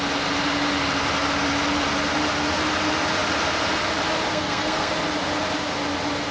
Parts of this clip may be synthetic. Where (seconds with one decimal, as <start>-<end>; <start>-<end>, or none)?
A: 4.3-4.9